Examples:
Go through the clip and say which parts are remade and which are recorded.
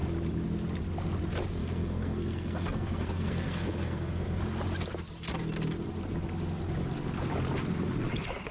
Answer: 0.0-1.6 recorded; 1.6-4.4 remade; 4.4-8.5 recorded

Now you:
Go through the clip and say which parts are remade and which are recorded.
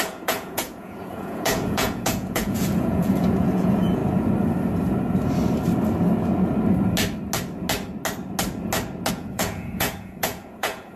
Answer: 0.0-4.0 remade; 4.0-9.1 recorded; 9.1-11.0 remade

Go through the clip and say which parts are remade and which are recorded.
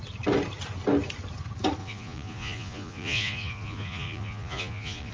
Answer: 0.0-1.8 recorded; 1.8-5.1 remade